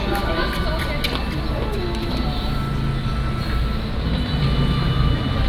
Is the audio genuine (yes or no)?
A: yes